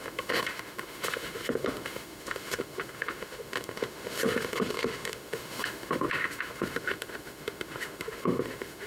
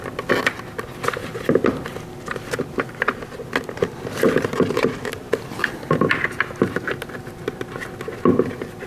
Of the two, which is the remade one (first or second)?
first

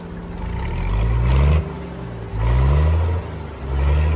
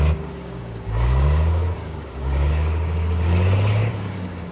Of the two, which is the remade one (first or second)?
second